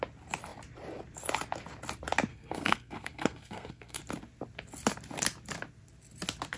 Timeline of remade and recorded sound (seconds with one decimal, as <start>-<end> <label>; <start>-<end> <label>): 0.0-2.3 recorded; 2.3-4.0 remade; 4.0-6.6 recorded